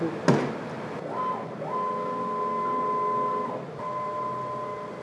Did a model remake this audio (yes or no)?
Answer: no